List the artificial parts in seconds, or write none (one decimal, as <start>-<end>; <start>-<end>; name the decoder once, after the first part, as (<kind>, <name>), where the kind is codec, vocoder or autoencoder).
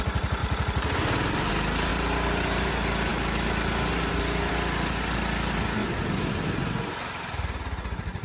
0.4-1.5 (vocoder, BigVGAN v2); 1.9-2.7; 5.8-6.4